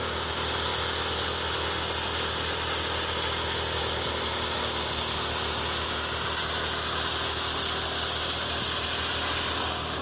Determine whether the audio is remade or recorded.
recorded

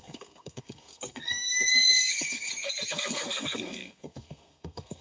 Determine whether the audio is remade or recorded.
remade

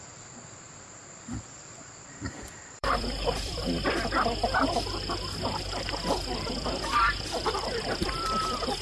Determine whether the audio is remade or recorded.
remade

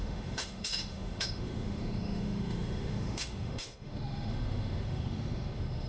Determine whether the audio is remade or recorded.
remade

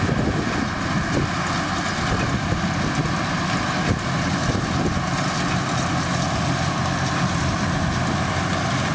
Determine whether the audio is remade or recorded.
recorded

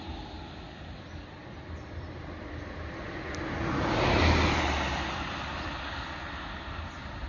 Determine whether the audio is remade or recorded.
recorded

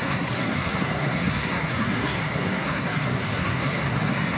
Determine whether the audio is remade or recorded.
remade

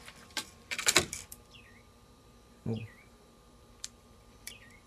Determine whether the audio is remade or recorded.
remade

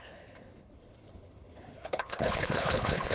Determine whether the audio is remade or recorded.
remade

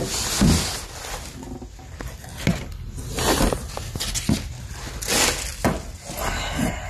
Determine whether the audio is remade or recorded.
recorded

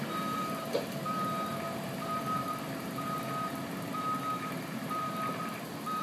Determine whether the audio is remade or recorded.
remade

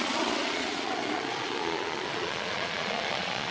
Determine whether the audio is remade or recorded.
remade